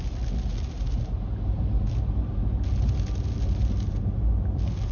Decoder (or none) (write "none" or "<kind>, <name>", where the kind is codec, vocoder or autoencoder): none